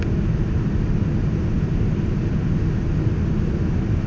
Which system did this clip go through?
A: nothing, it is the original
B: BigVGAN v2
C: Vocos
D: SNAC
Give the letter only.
A